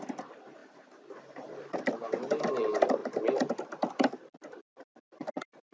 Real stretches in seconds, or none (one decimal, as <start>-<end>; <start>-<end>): 0.0-5.7